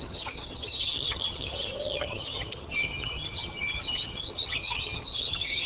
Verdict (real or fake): fake